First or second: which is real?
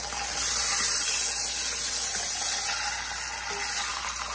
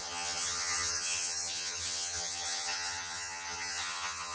first